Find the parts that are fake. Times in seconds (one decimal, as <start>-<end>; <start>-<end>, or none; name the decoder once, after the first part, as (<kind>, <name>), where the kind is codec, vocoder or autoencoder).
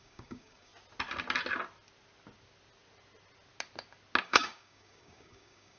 0.0-0.7 (codec, DAC); 4.2-5.8